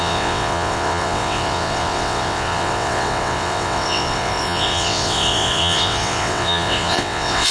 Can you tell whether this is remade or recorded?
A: remade